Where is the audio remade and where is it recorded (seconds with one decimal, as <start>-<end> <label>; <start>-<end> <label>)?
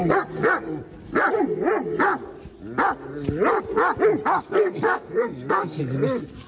0.0-4.4 recorded; 4.4-5.8 remade; 5.8-6.5 recorded